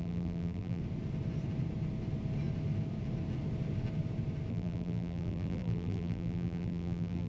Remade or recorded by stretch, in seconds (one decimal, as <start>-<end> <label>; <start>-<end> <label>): 0.0-0.8 remade; 0.8-4.5 recorded; 4.5-7.3 remade

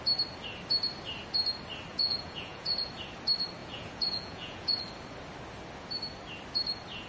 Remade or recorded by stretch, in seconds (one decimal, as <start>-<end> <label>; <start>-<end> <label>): 0.0-1.9 recorded; 1.9-2.9 remade; 2.9-3.6 recorded; 3.6-4.8 remade; 4.8-7.1 recorded

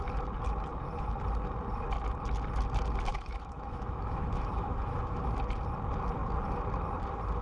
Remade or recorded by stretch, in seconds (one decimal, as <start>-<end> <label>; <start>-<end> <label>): 0.0-3.1 recorded; 3.1-5.2 remade; 5.2-7.4 recorded

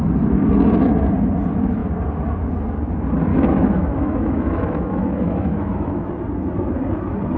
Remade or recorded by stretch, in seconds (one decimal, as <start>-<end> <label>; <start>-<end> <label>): 0.0-3.3 recorded; 3.3-6.1 remade; 6.1-7.4 recorded

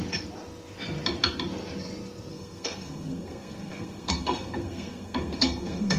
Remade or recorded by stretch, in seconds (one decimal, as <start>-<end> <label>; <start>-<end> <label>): 0.0-2.3 recorded; 2.3-6.0 remade

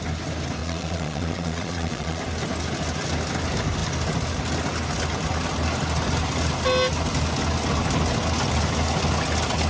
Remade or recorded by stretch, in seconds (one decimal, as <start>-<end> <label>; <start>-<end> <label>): 0.0-0.6 recorded; 0.6-2.2 remade; 2.2-9.7 recorded

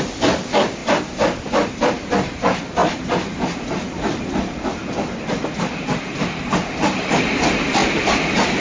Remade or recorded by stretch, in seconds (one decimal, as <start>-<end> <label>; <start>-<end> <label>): 0.0-2.8 remade; 2.8-3.6 recorded; 3.6-4.8 remade; 4.8-5.6 recorded; 5.6-8.6 remade